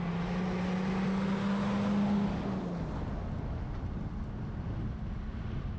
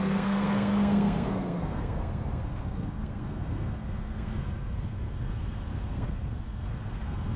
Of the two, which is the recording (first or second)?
first